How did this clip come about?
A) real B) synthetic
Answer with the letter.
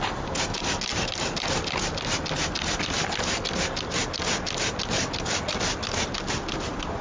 A